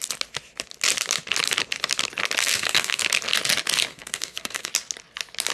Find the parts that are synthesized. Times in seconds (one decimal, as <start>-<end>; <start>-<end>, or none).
2.4-3.0; 3.9-4.7